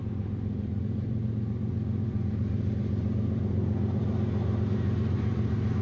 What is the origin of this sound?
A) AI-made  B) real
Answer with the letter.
A